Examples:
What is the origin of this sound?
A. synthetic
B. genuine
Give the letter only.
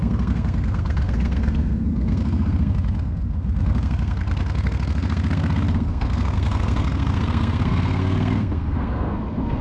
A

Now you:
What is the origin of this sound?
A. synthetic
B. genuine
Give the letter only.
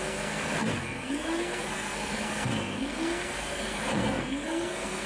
A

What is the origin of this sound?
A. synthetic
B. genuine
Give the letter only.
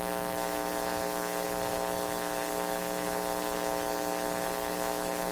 A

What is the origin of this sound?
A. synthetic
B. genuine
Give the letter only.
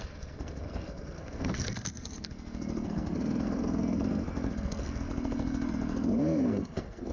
A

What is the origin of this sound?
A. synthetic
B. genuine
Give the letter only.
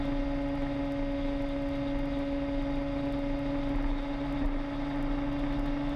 B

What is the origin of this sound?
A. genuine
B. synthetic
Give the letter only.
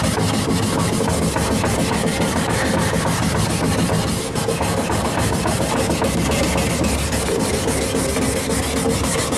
A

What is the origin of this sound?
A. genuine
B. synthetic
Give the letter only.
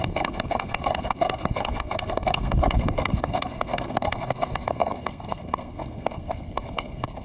B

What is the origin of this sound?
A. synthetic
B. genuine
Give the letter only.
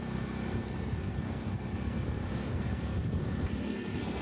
A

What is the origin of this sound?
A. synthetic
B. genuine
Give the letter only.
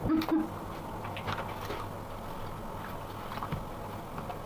B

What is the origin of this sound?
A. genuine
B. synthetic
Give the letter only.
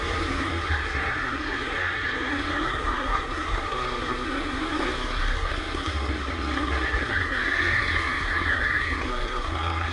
B